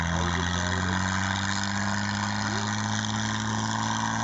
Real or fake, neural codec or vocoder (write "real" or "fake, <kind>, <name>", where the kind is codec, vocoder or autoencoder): real